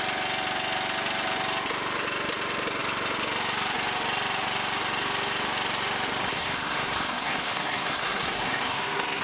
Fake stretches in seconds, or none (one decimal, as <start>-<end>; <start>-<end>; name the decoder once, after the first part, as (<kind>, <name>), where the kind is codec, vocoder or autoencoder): 6.2-9.2 (codec, SNAC)